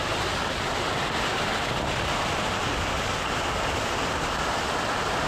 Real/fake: real